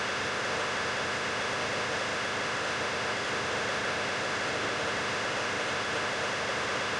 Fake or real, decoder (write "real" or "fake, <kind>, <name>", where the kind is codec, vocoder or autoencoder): fake, autoencoder, DAC-VAE